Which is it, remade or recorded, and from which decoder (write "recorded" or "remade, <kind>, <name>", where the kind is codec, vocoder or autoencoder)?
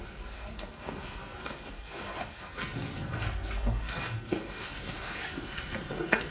remade, codec, SNAC